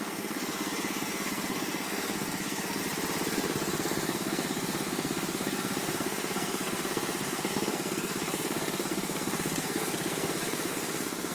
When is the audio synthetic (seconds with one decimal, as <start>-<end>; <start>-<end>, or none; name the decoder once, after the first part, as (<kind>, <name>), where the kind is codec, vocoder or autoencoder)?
0.0-2.8 (codec, SNAC); 3.3-11.3